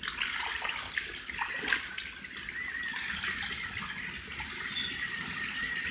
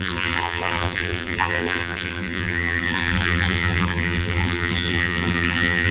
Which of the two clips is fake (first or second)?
second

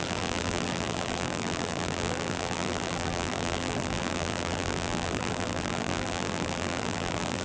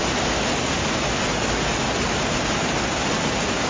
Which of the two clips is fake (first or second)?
first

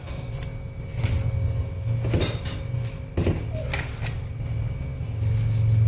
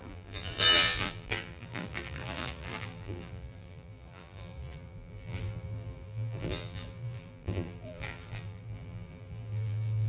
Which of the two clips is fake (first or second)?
second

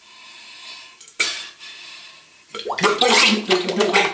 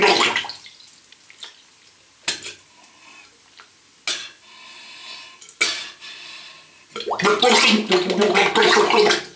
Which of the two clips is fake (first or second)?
first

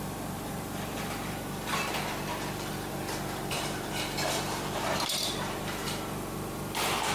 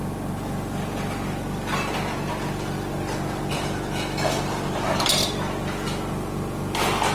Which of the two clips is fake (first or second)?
first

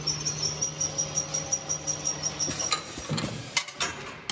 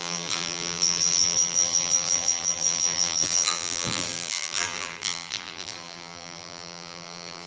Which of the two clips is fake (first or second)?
second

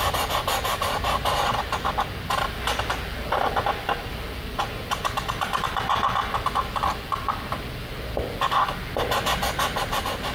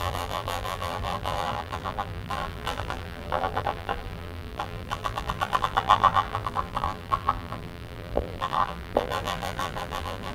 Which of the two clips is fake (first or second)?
second